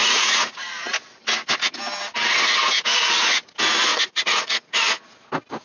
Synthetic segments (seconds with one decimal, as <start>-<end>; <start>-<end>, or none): 0.0-0.9; 3.9-4.9